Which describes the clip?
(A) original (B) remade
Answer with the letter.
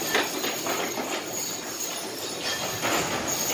A